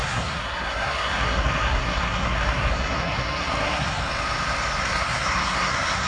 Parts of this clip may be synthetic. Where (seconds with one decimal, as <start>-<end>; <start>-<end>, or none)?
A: 0.0-4.0; 4.8-6.1